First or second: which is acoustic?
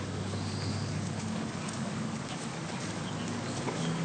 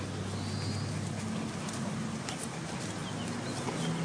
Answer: second